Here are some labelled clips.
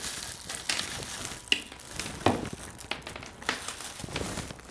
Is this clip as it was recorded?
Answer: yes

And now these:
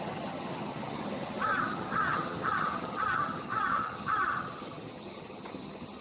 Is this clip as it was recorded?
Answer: no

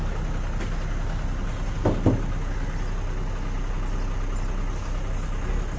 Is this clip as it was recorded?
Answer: yes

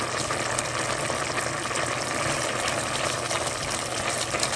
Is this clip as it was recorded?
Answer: yes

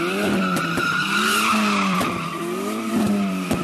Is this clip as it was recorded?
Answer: no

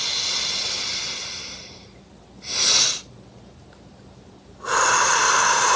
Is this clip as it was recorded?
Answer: yes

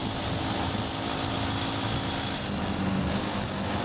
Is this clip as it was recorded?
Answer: yes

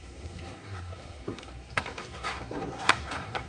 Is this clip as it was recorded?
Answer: no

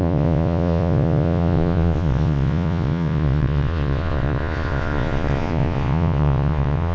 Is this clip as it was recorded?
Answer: no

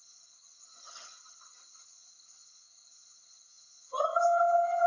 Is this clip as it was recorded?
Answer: no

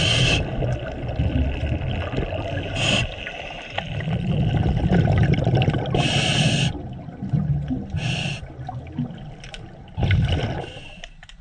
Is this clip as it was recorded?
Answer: yes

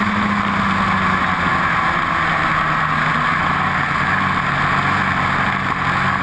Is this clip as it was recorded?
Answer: yes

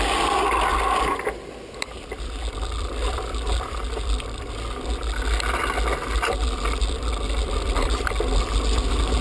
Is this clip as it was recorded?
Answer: yes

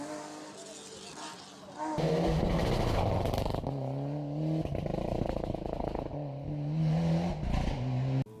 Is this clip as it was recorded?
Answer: yes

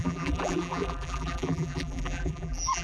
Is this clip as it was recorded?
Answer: no